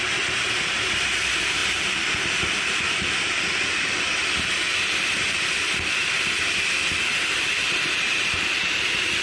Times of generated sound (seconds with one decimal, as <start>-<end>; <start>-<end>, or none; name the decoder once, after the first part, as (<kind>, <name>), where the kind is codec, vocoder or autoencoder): 1.6-3.4 (vocoder, BigVGAN v2); 4.7-9.2